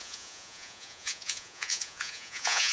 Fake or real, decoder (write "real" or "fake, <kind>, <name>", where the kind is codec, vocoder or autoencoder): fake, vocoder, Vocos